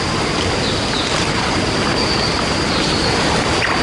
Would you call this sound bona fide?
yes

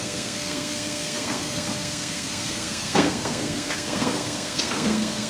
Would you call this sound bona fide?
no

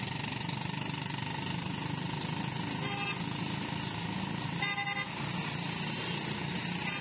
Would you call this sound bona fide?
yes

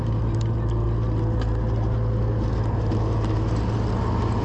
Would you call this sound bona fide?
yes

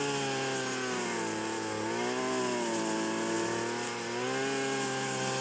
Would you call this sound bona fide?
yes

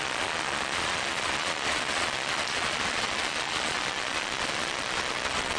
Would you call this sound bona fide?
no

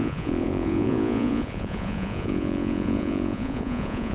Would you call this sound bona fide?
no